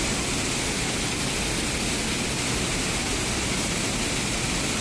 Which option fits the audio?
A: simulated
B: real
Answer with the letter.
B